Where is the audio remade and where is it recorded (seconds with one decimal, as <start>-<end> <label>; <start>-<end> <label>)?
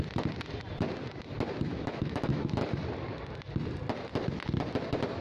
0.0-1.7 recorded; 1.7-2.5 remade; 2.5-5.2 recorded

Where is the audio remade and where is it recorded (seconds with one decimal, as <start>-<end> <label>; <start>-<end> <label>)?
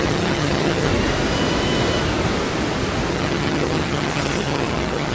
0.0-0.9 remade; 0.9-3.1 recorded; 3.1-5.1 remade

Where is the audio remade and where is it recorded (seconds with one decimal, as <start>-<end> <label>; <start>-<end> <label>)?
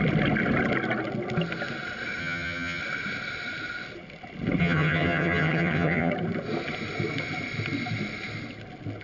0.0-2.2 recorded; 2.2-2.8 remade; 2.8-4.6 recorded; 4.6-6.1 remade; 6.1-9.0 recorded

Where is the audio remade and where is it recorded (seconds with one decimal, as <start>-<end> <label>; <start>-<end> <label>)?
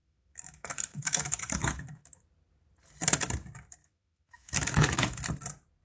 0.0-2.2 remade; 2.2-3.8 recorded; 3.8-5.2 remade; 5.2-5.8 recorded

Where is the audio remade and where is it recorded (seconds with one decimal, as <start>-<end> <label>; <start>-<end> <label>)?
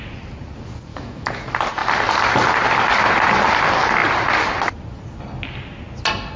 0.0-0.9 recorded; 0.9-1.4 remade; 1.4-6.4 recorded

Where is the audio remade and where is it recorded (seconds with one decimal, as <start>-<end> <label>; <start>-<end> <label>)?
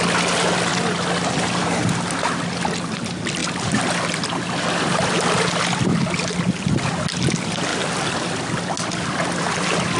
0.0-0.7 recorded; 0.7-2.1 remade; 2.1-7.7 recorded; 7.7-8.4 remade; 8.4-10.0 recorded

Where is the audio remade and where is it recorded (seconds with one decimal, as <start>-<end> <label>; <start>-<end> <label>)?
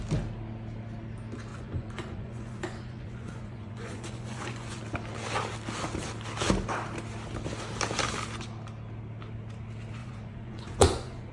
0.0-1.5 recorded; 1.5-4.8 remade; 4.8-10.0 recorded; 10.0-11.3 remade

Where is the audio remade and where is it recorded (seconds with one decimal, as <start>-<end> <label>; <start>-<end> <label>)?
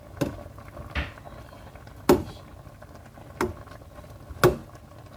0.0-5.2 recorded